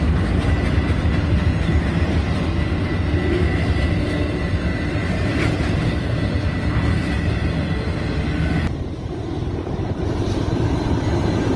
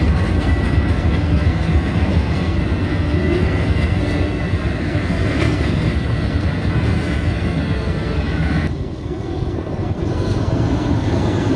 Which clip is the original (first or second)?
first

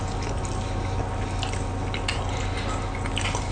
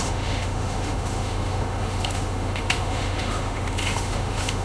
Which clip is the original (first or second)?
first